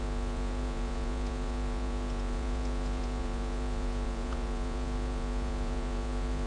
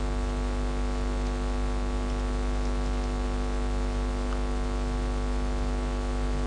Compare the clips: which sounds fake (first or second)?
first